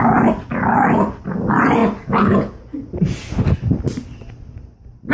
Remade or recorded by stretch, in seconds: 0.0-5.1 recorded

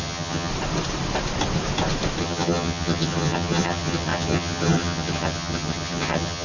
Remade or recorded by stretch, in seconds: 0.0-0.5 remade; 0.5-2.2 recorded; 2.2-6.4 remade

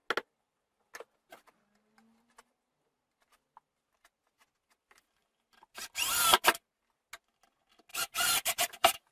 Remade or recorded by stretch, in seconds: 0.0-7.9 recorded; 7.9-9.1 remade

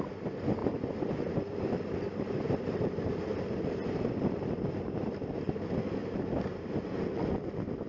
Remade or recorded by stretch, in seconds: 0.0-0.6 recorded; 0.6-3.7 remade; 3.7-6.0 recorded; 6.0-6.7 remade; 6.7-7.9 recorded

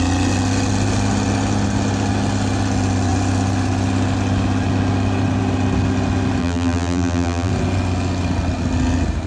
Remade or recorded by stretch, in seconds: 0.0-6.4 recorded; 6.4-7.5 remade; 7.5-9.3 recorded

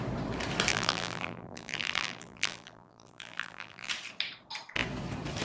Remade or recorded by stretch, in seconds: 0.0-0.7 recorded; 0.7-3.9 remade; 3.9-5.4 recorded